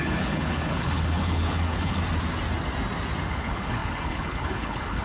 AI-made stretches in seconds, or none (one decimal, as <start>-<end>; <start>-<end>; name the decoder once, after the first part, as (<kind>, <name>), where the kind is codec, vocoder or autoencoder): 0.0-2.0 (codec, HILCodec); 3.3-5.0